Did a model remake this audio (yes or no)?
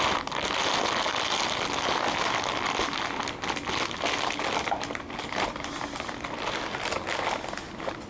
no